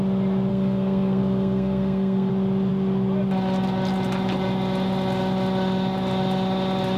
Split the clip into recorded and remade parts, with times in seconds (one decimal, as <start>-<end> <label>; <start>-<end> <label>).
0.0-0.5 recorded; 0.5-2.3 remade; 2.3-7.0 recorded